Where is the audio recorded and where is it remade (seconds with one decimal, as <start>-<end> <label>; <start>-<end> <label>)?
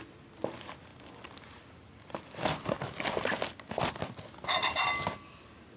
0.0-5.8 recorded